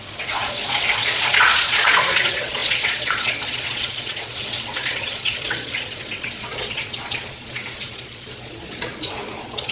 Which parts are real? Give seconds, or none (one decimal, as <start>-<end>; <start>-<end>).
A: none

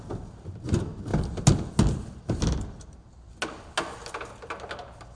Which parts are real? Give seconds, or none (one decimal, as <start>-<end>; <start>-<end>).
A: 0.0-5.2